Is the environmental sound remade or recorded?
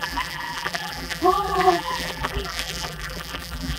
remade